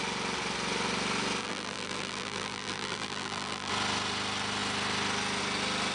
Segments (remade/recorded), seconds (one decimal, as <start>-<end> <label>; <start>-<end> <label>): 0.0-1.4 recorded; 1.4-3.7 remade; 3.7-5.9 recorded